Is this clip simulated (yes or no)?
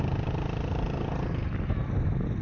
no